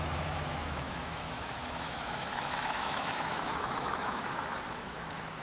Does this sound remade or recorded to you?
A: remade